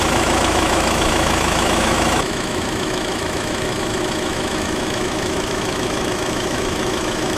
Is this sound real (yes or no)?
no